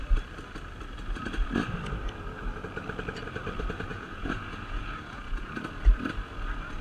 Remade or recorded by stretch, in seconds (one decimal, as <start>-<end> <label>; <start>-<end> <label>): 0.0-3.9 recorded; 3.9-5.5 remade; 5.5-6.8 recorded